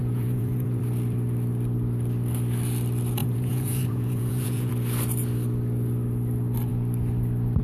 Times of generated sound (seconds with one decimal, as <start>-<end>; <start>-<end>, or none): 0.0-0.8; 3.2-4.7